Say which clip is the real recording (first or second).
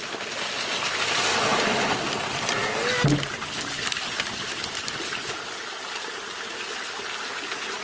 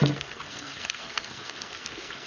first